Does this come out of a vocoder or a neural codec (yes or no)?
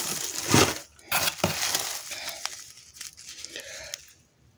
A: no